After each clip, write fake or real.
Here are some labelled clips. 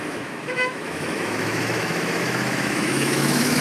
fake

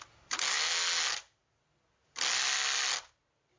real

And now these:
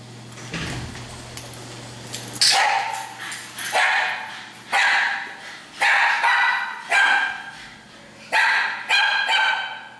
real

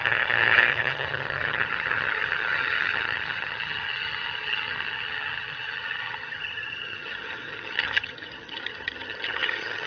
fake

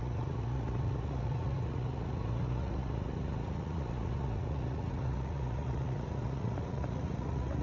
fake